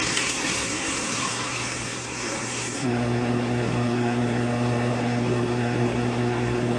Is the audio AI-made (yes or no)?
yes